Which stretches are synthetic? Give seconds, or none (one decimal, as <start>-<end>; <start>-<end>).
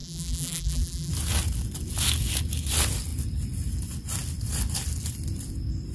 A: 0.0-1.1